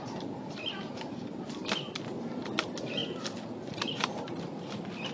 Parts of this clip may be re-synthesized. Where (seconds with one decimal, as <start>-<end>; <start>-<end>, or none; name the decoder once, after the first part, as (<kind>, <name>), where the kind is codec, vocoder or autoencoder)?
none